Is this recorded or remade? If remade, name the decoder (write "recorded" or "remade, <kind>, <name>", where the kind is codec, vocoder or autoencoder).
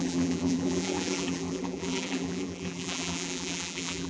remade, vocoder, BigVGAN v2